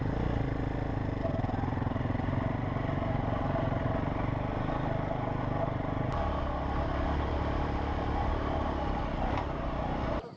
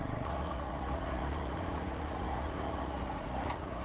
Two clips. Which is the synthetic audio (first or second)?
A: second